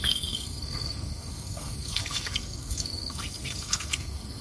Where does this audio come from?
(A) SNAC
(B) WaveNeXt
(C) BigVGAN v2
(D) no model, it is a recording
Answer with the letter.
A